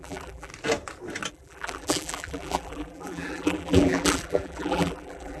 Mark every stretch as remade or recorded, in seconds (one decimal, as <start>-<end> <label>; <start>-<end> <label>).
0.0-0.5 remade; 0.5-1.3 recorded; 1.3-5.4 remade